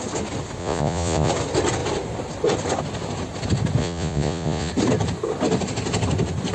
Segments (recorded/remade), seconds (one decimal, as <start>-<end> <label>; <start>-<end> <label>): 0.0-0.6 recorded; 0.6-1.3 remade; 1.3-3.8 recorded; 3.8-4.7 remade; 4.7-6.5 recorded